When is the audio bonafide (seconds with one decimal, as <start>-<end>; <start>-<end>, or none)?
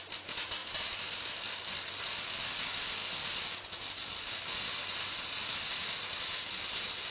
0.0-7.1